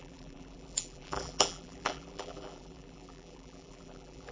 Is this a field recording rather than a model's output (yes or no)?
no